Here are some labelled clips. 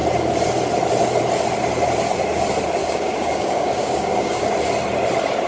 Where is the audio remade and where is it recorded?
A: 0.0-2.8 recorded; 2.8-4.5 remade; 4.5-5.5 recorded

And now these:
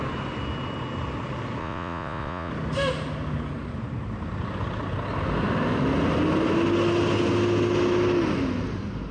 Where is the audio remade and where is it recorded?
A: 0.0-1.6 recorded; 1.6-2.5 remade; 2.5-9.1 recorded

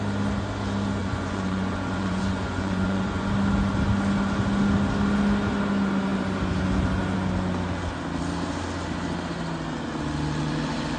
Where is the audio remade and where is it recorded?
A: 0.0-1.0 recorded; 1.0-3.3 remade; 3.3-11.0 recorded

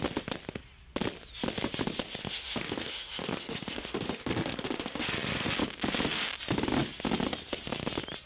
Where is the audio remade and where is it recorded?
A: 0.0-2.2 recorded; 2.2-5.5 remade; 5.5-8.3 recorded

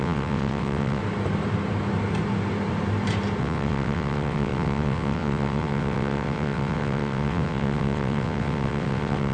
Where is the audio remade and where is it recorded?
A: 0.0-1.0 remade; 1.0-3.4 recorded; 3.4-9.3 remade

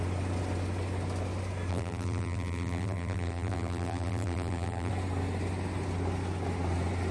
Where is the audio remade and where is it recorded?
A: 0.0-1.7 recorded; 1.7-4.9 remade; 4.9-7.1 recorded

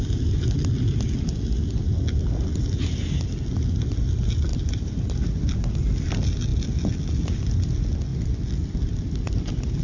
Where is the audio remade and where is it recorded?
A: 0.0-4.5 recorded; 4.5-6.1 remade; 6.1-8.1 recorded; 8.1-9.0 remade; 9.0-9.8 recorded